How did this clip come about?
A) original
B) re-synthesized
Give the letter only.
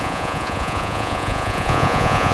B